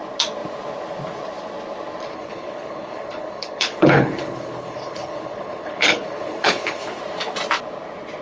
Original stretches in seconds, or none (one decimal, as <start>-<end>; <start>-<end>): 0.0-2.1; 7.0-8.2